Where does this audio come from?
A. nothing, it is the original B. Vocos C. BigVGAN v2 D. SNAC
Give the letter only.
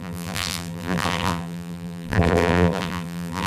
C